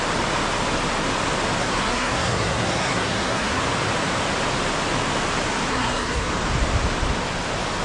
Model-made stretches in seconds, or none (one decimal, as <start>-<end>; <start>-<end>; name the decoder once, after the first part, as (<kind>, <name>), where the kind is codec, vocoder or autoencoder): 1.6-3.6 (codec, SNAC); 5.7-6.3